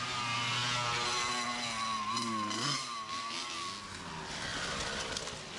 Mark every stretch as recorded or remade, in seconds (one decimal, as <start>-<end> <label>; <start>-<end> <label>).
0.0-5.6 recorded